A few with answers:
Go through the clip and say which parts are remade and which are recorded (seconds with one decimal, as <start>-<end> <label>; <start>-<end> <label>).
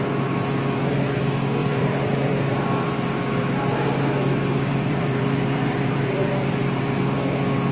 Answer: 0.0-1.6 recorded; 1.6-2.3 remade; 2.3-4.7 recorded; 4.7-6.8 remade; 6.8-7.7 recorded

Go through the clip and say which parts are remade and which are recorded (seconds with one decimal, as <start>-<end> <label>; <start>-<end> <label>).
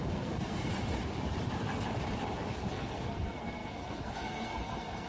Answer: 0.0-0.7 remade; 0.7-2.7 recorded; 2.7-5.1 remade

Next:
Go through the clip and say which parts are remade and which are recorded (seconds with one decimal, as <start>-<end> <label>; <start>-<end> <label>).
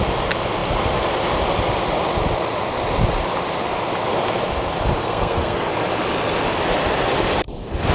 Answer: 0.0-5.0 recorded; 5.0-5.7 remade; 5.7-7.9 recorded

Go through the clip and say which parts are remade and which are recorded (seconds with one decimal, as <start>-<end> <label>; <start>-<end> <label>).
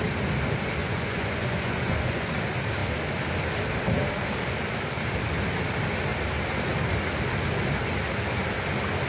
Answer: 0.0-0.8 recorded; 0.8-2.4 remade; 2.4-9.1 recorded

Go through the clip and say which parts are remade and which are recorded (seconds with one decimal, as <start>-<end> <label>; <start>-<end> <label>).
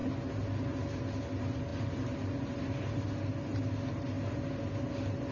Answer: 0.0-5.3 recorded